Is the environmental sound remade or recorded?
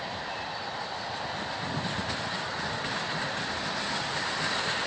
recorded